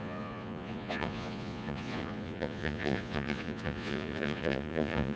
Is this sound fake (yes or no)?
yes